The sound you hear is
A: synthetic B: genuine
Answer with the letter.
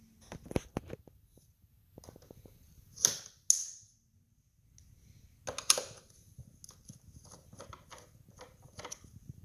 B